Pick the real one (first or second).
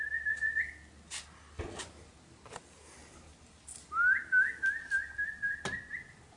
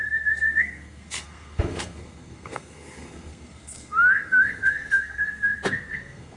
first